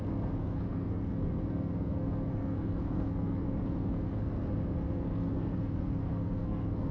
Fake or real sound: fake